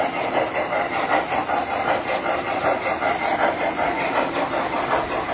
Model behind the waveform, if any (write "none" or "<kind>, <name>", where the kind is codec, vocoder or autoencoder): vocoder, BigVGAN v2